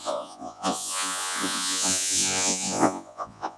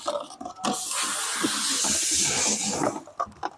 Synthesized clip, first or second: first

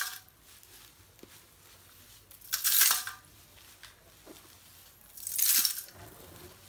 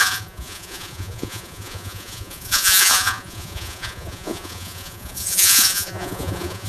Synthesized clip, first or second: second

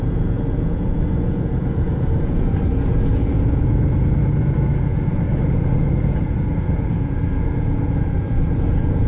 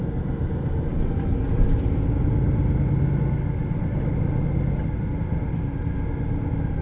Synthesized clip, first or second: first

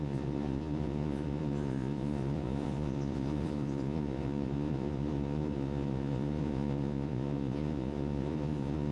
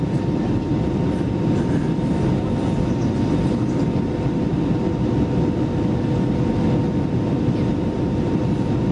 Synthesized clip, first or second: first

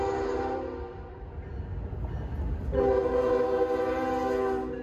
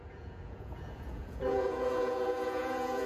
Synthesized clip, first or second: second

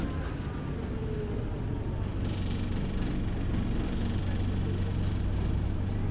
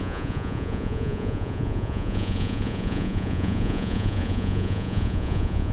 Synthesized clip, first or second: second